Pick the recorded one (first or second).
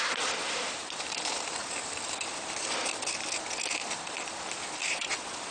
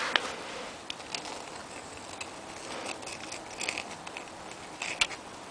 second